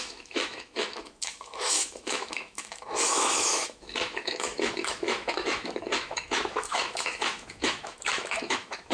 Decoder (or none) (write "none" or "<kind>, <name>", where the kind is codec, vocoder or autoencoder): autoencoder, DAC-VAE